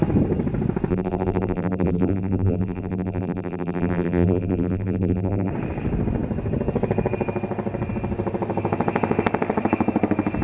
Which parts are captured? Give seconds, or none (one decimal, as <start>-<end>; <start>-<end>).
0.0-0.9; 5.5-10.4